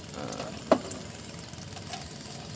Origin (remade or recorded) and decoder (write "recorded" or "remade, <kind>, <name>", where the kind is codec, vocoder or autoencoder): recorded